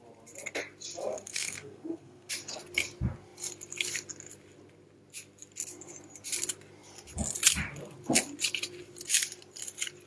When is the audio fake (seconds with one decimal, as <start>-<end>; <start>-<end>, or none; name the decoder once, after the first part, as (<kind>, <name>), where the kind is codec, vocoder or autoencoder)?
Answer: 1.1-2.3 (codec, SNAC)